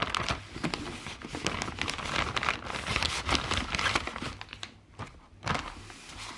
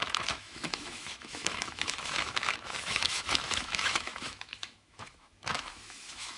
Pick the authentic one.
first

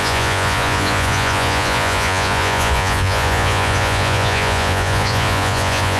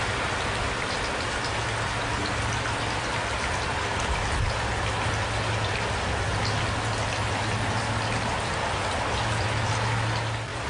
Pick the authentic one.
second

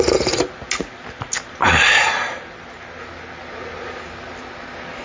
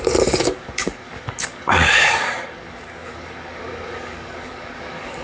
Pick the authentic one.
first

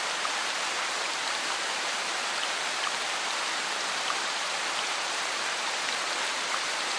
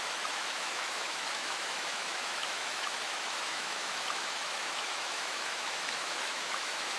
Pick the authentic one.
first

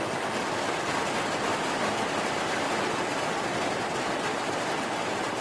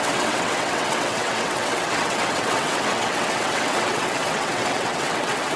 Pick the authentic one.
first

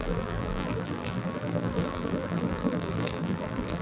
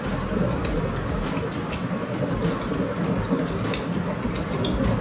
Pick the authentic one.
second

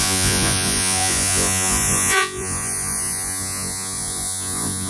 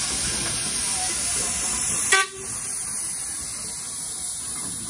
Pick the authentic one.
second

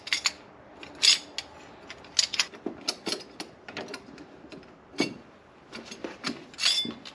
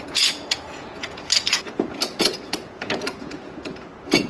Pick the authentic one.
first